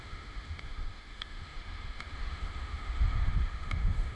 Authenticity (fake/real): fake